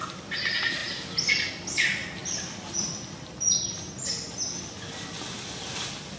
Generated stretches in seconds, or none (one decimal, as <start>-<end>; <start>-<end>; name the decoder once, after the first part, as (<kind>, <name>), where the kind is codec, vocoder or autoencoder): none